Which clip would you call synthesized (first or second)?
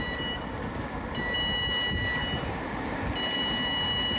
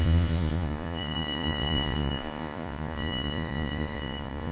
second